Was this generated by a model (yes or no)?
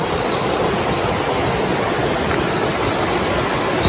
no